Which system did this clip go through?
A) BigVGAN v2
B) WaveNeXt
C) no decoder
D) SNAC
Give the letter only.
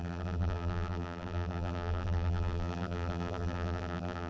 A